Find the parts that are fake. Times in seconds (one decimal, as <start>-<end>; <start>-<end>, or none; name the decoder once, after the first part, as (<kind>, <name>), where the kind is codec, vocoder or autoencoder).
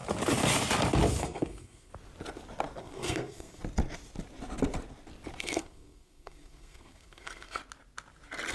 1.2-1.9 (codec, SNAC); 2.8-3.6; 5.4-7.6